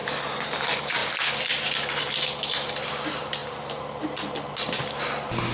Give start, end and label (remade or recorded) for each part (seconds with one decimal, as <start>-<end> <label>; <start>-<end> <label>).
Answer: 0.0-5.5 recorded